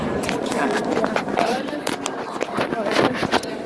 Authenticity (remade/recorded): recorded